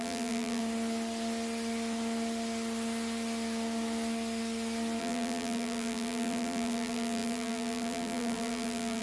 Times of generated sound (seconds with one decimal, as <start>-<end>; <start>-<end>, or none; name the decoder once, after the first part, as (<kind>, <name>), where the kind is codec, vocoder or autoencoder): 0.0-0.6 (vocoder, BigVGAN v2); 5.0-9.0